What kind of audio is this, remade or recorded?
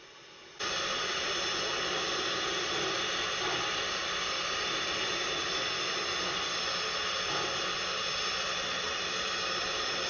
recorded